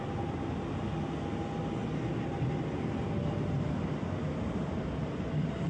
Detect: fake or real real